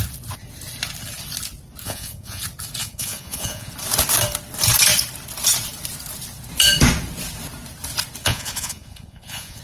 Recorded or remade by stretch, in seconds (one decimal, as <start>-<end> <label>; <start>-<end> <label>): 0.0-1.8 recorded; 1.8-2.4 remade; 2.4-2.8 recorded; 2.8-3.7 remade; 3.7-8.2 recorded; 8.2-9.6 remade